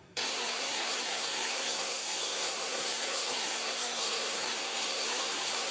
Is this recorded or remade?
remade